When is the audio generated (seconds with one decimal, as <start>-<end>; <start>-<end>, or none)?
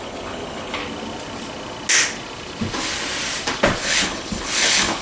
0.0-0.8; 3.8-5.0